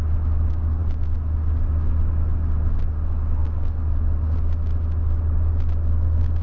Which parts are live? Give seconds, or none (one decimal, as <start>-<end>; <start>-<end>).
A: 0.0-6.4